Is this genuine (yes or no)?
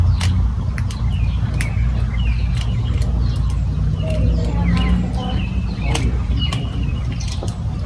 yes